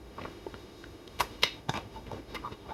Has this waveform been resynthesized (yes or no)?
yes